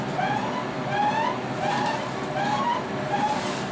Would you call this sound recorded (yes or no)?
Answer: yes